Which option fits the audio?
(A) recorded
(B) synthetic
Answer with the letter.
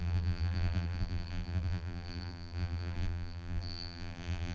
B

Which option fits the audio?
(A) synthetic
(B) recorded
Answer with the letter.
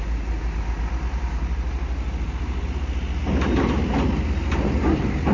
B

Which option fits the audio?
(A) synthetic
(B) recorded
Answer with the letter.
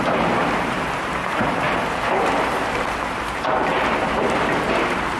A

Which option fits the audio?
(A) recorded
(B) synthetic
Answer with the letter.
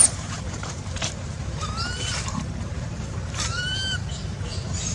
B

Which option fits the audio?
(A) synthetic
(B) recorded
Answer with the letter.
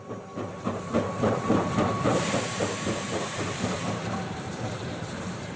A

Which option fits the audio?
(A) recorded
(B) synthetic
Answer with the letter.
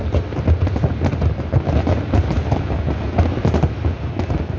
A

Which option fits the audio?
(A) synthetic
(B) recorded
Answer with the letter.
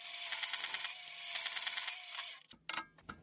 B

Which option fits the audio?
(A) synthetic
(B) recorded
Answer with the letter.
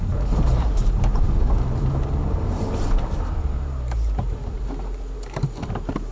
A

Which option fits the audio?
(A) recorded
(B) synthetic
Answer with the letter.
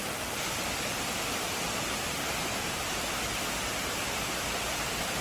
A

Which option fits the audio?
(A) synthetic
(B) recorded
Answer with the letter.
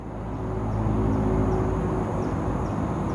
B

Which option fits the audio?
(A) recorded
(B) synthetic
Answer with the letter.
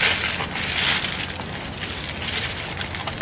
A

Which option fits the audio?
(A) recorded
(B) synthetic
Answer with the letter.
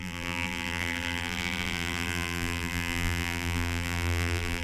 B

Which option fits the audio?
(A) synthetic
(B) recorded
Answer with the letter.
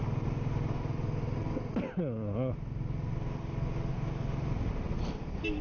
B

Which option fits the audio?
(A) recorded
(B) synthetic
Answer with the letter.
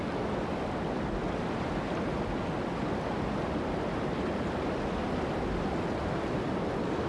A